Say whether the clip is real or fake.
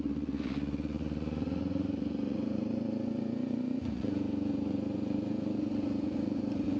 fake